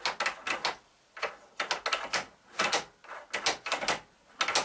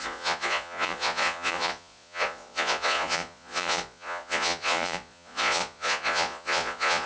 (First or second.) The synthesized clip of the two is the second